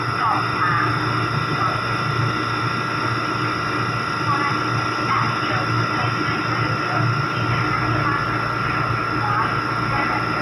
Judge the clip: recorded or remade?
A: recorded